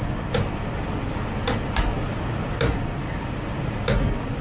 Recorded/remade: recorded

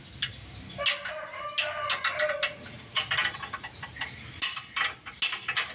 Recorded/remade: recorded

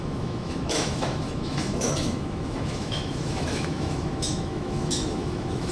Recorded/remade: remade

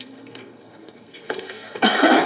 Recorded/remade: remade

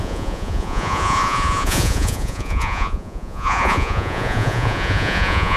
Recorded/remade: remade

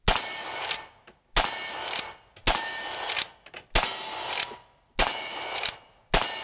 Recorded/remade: recorded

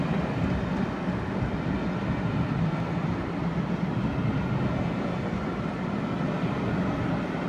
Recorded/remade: recorded